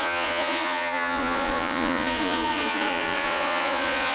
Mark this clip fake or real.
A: fake